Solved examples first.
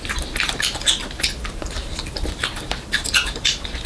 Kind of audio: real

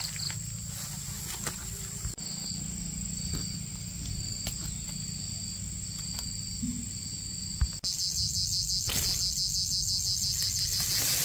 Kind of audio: real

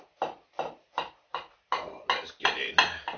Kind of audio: real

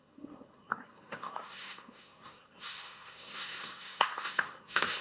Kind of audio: fake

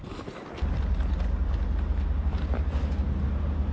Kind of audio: real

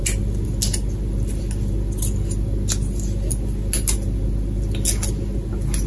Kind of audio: real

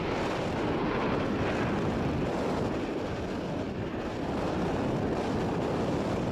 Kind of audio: real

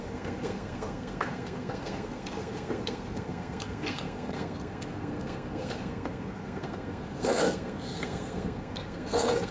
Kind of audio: fake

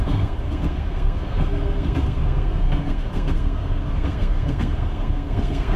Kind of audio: fake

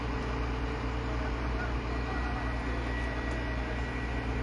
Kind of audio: real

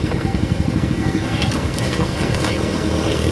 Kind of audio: fake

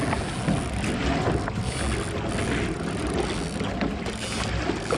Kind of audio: real